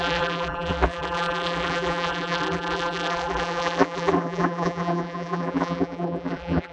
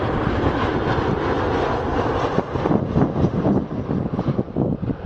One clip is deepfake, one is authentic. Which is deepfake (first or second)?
first